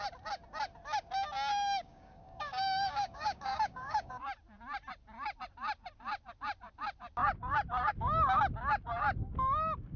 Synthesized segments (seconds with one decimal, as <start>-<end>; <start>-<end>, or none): 1.5-4.2